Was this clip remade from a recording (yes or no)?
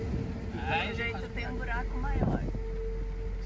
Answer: no